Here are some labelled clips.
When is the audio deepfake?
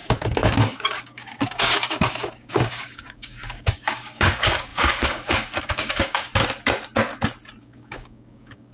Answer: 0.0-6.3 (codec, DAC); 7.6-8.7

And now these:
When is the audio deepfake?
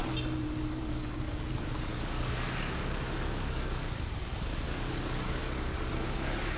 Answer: 0.9-6.6 (codec, DAC)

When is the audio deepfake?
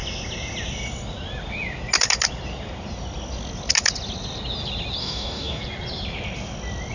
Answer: 5.0-5.6 (codec, DAC)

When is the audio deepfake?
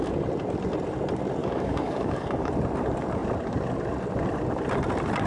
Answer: 1.4-2.5 (codec, DAC)